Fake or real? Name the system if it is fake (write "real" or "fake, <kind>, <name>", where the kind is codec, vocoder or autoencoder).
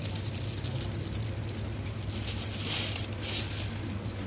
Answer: real